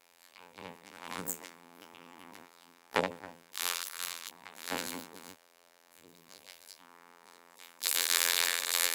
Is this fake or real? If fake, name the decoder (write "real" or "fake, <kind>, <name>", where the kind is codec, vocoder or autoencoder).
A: fake, vocoder, BigVGAN v2